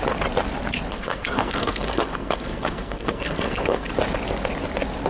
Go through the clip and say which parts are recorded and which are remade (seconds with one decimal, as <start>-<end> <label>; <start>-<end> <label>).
0.0-0.9 recorded; 0.9-3.9 remade; 3.9-5.1 recorded